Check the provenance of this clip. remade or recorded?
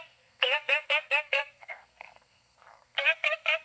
remade